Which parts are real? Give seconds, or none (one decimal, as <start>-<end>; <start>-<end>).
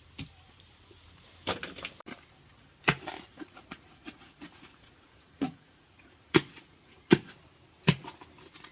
0.0-3.3; 7.3-8.7